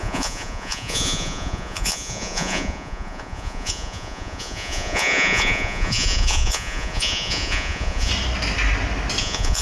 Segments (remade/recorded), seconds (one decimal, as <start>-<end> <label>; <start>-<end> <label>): 0.0-8.1 remade; 8.1-9.2 recorded; 9.2-9.6 remade